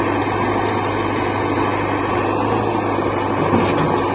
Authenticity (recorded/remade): recorded